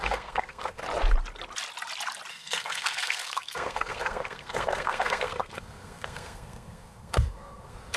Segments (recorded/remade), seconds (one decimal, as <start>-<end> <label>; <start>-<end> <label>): 0.0-0.8 remade; 0.8-2.3 recorded; 2.3-8.0 remade